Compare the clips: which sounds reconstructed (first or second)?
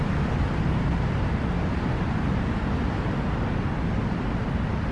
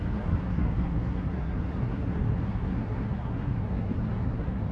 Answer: second